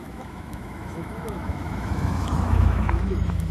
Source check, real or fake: fake